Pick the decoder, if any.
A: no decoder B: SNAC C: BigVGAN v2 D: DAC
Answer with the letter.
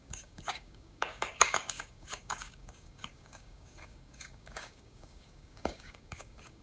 D